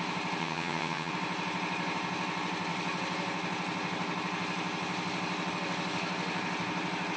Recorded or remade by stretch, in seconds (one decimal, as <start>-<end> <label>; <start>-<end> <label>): 0.0-0.4 recorded; 0.4-1.1 remade; 1.1-7.2 recorded